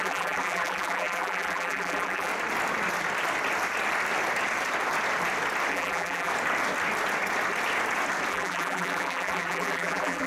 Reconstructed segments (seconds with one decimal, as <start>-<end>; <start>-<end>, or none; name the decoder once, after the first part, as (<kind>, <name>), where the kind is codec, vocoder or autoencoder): 0.0-2.3 (vocoder, BigVGAN v2); 5.7-6.3; 8.3-10.3